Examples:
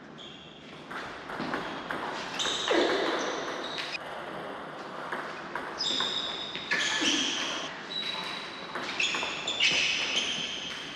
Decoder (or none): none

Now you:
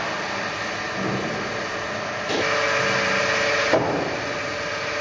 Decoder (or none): none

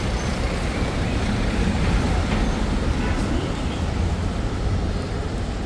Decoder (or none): vocoder, BigVGAN v2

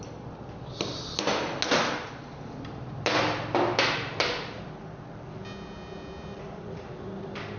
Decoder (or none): none